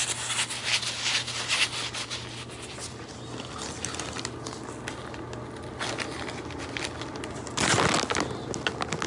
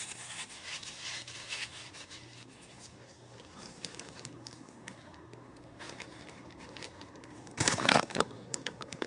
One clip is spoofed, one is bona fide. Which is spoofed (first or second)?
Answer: second